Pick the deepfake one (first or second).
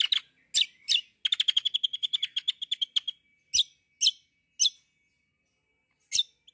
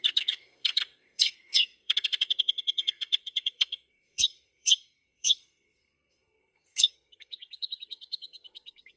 second